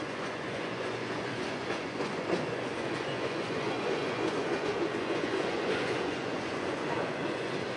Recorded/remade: remade